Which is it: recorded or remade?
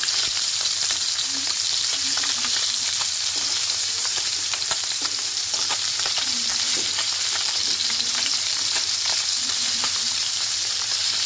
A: remade